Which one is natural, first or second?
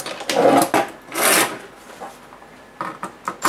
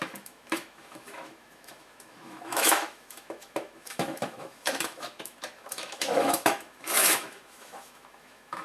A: first